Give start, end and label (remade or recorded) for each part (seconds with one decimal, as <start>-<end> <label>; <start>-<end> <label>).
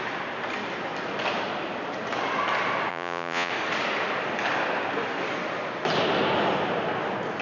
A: 0.0-2.9 recorded; 2.9-3.5 remade; 3.5-7.4 recorded